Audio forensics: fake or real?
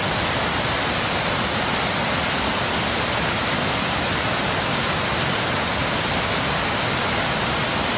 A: real